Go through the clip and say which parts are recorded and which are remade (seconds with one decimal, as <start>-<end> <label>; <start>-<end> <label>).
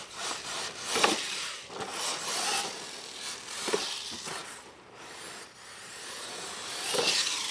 0.0-7.5 recorded